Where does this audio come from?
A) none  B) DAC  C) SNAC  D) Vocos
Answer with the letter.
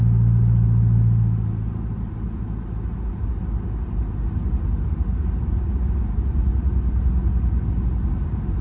A